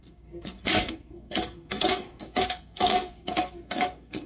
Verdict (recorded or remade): remade